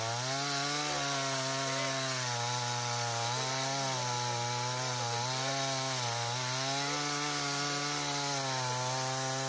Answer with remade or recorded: recorded